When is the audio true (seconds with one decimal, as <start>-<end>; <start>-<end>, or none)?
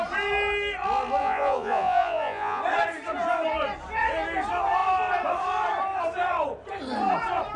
0.0-1.2; 2.6-7.6